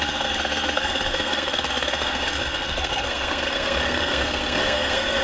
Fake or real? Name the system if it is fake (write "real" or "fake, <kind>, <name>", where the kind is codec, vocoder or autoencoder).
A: fake, codec, SNAC